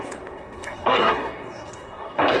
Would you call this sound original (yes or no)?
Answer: no